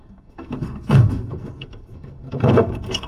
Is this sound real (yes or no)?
no